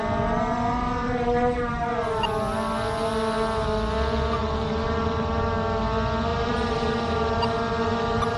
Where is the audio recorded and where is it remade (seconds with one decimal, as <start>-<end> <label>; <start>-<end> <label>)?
0.0-1.0 recorded; 1.0-2.2 remade; 2.2-4.4 recorded; 4.4-5.5 remade; 5.5-6.3 recorded; 6.3-8.4 remade